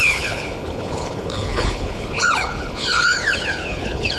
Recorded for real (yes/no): no